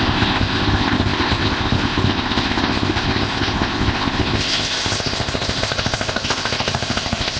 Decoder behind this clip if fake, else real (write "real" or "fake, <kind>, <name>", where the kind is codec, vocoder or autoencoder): fake, codec, ZipCodec